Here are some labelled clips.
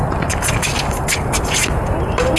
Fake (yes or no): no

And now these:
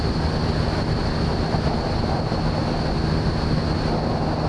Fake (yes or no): no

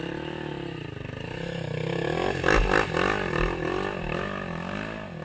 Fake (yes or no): no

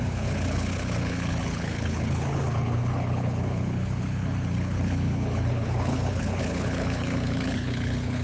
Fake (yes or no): yes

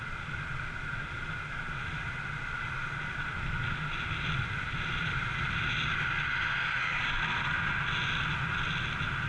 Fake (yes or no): no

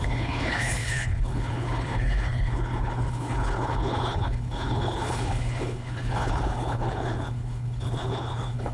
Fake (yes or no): yes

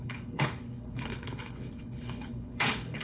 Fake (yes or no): yes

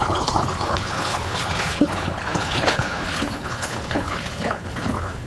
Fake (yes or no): yes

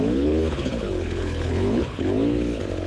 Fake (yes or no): yes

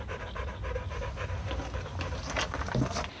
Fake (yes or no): no